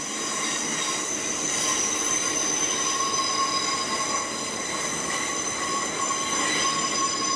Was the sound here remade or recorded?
recorded